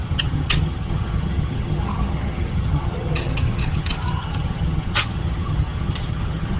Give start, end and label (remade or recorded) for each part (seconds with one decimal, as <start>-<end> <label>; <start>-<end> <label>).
0.0-6.6 remade